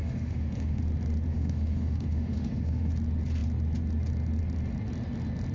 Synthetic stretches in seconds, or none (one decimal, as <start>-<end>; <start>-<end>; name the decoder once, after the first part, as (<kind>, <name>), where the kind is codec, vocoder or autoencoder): 0.0-0.8 (autoencoder, DAC-VAE); 1.3-2.9